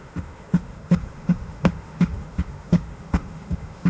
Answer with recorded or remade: remade